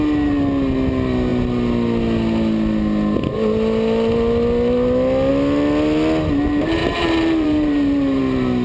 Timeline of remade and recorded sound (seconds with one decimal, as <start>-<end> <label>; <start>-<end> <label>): 0.0-6.8 recorded; 6.8-8.2 remade; 8.2-8.6 recorded